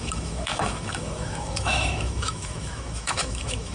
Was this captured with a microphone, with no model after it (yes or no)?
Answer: no